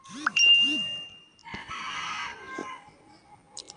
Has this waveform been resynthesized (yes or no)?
yes